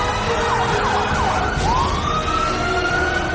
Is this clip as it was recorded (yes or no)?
yes